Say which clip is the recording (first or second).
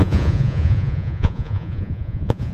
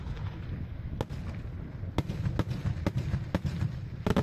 second